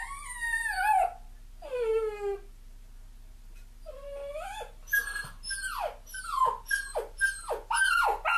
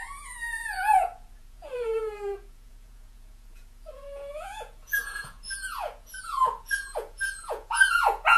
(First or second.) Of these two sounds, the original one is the first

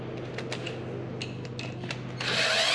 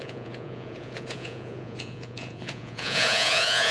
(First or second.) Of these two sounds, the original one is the first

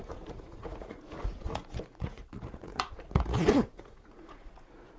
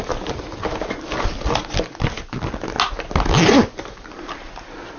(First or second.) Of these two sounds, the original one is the second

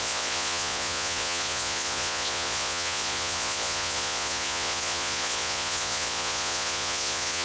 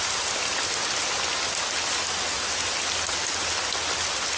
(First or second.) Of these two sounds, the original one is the second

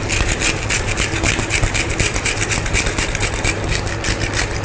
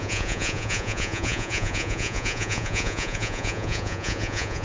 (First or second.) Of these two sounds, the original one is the first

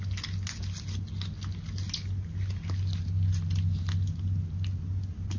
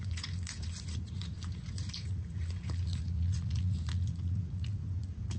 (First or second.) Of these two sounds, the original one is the first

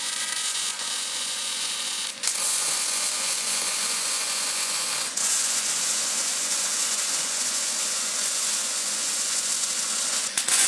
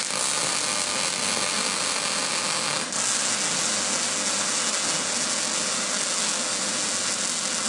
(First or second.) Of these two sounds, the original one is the second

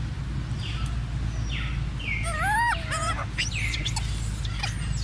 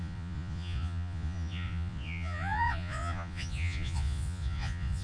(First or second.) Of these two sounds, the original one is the first